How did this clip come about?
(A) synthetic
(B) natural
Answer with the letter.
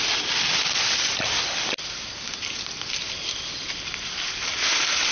B